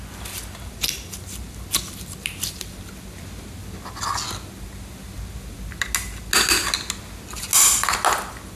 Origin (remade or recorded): recorded